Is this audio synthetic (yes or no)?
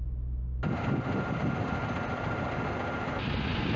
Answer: no